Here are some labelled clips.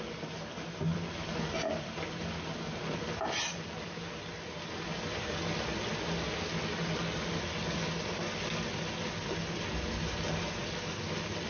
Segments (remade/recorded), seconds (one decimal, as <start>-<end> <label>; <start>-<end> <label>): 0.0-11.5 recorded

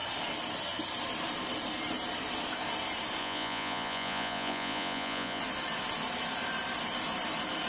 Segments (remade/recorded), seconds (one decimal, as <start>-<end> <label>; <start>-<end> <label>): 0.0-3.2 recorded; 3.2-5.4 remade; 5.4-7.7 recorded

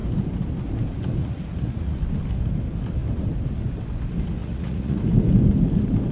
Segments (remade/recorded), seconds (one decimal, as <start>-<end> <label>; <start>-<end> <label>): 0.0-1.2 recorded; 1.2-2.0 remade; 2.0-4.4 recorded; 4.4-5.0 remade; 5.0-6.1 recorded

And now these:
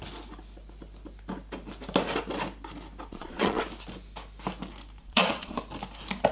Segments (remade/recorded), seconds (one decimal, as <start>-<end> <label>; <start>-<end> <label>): 0.0-3.1 recorded; 3.1-3.6 remade; 3.6-5.0 recorded; 5.0-5.6 remade; 5.6-6.3 recorded

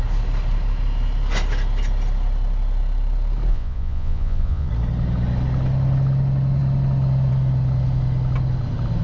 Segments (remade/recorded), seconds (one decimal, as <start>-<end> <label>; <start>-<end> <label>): 0.0-3.5 recorded; 3.5-4.7 remade; 4.7-9.0 recorded

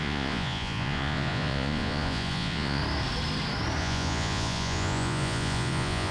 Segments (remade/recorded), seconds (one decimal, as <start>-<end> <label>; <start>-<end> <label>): 0.0-2.8 remade; 2.8-3.8 recorded; 3.8-6.1 remade

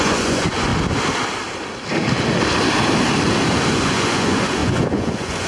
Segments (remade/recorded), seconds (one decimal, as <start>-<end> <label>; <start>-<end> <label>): 0.0-0.7 remade; 0.7-3.7 recorded; 3.7-5.5 remade

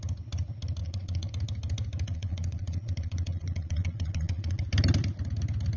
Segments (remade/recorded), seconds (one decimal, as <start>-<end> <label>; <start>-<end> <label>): 0.0-0.8 recorded; 0.8-1.3 remade; 1.3-2.1 recorded; 2.1-4.6 remade; 4.6-5.8 recorded